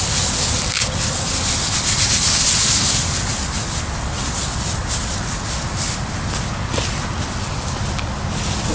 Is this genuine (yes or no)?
yes